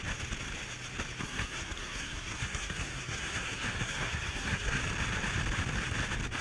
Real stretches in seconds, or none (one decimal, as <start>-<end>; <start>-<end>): 0.0-1.2; 4.8-6.4